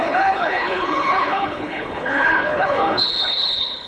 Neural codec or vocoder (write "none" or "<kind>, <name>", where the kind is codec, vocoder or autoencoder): codec, HILCodec